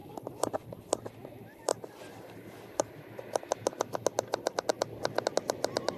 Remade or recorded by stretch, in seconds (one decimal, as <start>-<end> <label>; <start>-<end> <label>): 0.0-1.7 recorded; 1.7-3.2 remade; 3.2-6.0 recorded